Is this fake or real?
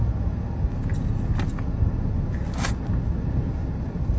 real